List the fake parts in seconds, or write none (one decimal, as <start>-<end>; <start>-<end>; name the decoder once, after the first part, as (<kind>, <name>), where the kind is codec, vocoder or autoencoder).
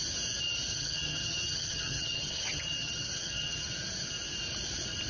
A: 0.7-3.7 (vocoder, HiFi-GAN)